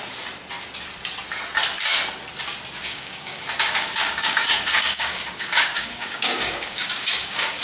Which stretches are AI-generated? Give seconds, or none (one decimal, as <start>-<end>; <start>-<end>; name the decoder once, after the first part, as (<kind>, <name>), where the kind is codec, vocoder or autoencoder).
2.8-7.6 (codec, DAC)